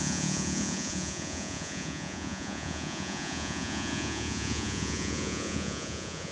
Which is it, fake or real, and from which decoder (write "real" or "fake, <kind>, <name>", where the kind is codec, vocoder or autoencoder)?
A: fake, vocoder, Vocos